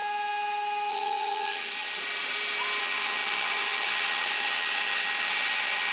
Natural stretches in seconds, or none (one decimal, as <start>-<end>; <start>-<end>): 0.0-0.9; 2.0-2.8